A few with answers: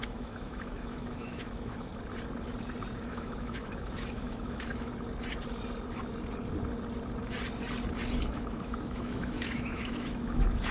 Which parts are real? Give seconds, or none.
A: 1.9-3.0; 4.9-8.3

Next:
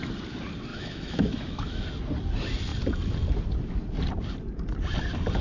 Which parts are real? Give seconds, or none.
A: 0.0-0.7; 1.8-5.4

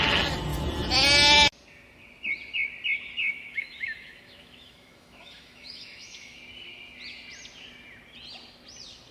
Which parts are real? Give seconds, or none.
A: 0.0-3.2; 6.4-9.1

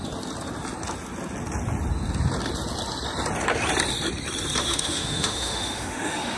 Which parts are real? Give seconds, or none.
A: 0.0-4.6

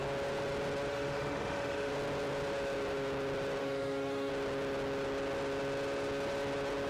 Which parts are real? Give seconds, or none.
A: 0.0-0.9; 1.9-3.6; 4.3-6.9

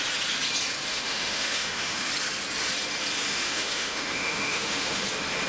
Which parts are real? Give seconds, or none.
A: 0.0-0.9; 2.1-3.3; 5.0-5.5

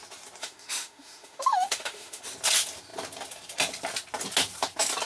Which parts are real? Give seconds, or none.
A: 0.0-0.4; 2.2-5.1